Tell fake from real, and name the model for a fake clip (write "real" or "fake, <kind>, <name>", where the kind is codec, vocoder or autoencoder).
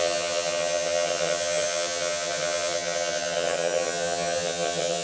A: fake, vocoder, HiFi-GAN